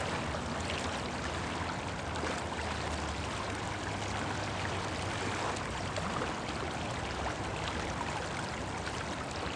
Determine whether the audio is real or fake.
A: real